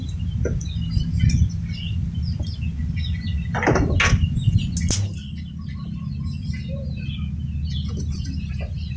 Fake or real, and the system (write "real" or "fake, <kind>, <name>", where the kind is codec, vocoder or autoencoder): real